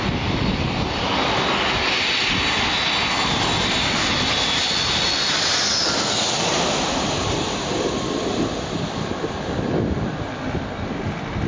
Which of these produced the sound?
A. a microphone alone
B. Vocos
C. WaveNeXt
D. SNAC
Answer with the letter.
A